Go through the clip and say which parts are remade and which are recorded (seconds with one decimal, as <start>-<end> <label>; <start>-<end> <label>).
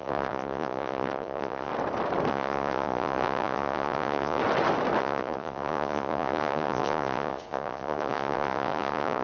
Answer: 0.0-1.7 remade; 1.7-2.3 recorded; 2.3-4.4 remade; 4.4-5.0 recorded; 5.0-9.2 remade